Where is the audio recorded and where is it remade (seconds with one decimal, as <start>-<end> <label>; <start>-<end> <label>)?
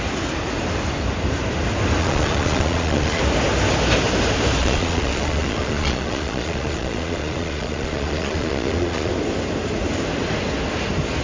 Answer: 0.0-2.0 recorded; 2.0-3.2 remade; 3.2-4.6 recorded; 4.6-9.1 remade; 9.1-11.2 recorded